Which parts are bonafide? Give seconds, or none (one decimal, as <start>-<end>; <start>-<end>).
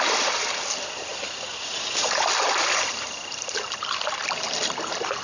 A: 0.0-5.2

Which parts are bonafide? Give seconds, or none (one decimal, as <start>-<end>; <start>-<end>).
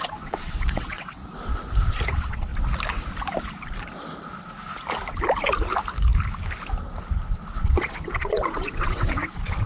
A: 1.2-2.1; 2.5-7.5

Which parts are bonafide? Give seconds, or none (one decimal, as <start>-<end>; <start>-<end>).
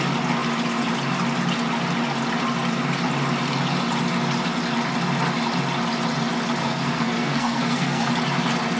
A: 0.0-6.6; 8.1-8.8